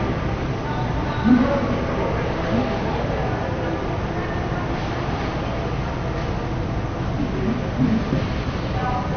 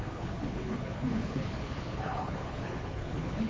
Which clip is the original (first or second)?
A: first